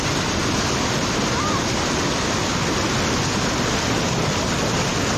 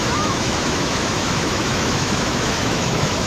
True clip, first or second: first